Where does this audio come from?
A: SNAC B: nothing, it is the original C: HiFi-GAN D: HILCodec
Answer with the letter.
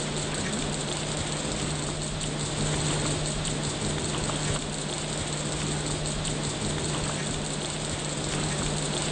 B